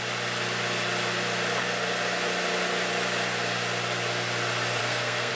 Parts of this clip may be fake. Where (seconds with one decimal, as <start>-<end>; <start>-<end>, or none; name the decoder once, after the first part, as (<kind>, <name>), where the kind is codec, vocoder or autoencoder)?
4.8-5.3 (codec, SNAC)